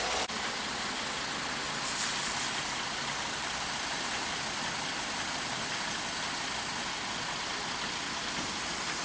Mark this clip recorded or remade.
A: recorded